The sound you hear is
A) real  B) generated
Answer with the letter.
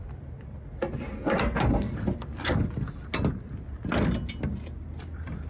A